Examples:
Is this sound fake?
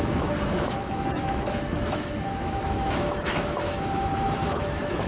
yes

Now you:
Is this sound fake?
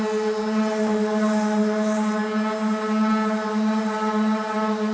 no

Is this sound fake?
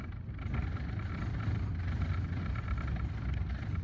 no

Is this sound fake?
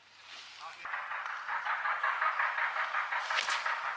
no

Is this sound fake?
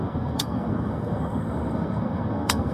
yes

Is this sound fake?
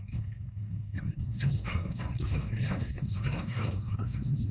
yes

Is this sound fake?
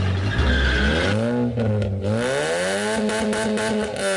no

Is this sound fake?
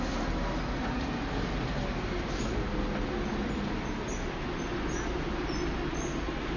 no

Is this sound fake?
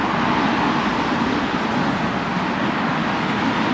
no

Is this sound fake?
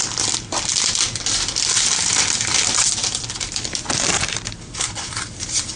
no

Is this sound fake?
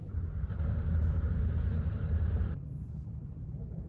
yes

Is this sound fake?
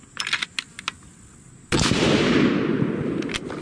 no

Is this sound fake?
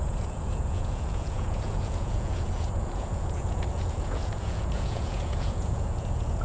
yes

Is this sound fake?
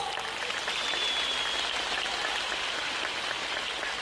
no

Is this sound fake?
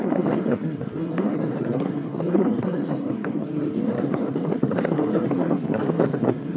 yes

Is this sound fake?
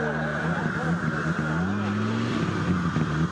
no